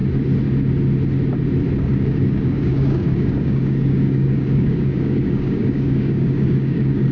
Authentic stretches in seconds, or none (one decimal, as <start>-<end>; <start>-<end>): 0.0-1.8